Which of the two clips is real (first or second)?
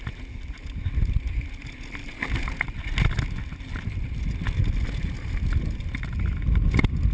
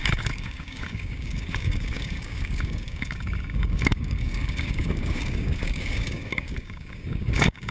first